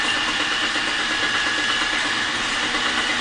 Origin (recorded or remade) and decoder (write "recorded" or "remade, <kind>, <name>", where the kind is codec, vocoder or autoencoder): recorded